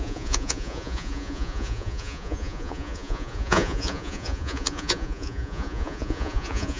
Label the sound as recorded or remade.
remade